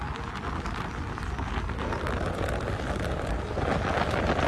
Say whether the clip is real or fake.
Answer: real